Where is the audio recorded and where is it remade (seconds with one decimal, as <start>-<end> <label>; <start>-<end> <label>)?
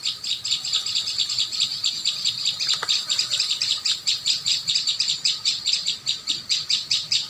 0.0-1.7 recorded; 1.7-3.9 remade; 3.9-4.5 recorded; 4.5-7.3 remade